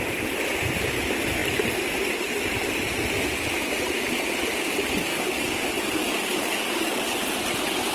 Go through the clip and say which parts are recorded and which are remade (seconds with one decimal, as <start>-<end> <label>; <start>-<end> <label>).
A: 0.0-5.1 recorded; 5.1-7.0 remade; 7.0-7.9 recorded